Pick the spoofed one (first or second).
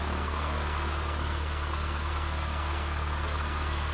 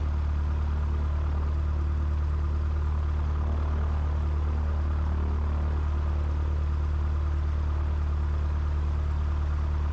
first